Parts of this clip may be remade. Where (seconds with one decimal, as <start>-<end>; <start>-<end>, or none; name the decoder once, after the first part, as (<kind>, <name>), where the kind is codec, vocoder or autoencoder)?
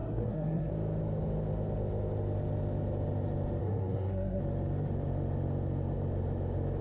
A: 0.0-0.7 (codec, SNAC); 3.6-4.4